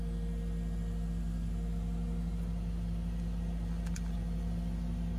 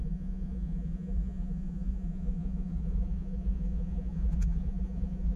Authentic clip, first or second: first